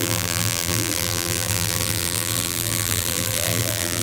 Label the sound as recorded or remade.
remade